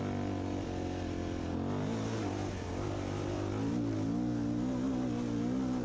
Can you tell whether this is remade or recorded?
recorded